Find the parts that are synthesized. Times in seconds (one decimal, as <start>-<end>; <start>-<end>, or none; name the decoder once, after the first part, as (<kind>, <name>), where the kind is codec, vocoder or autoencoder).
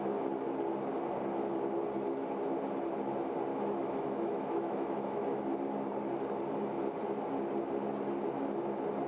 3.5-5.4 (autoencoder, DAC-VAE)